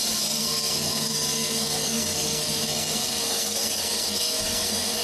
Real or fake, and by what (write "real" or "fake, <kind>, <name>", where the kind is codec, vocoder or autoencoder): fake, codec, SNAC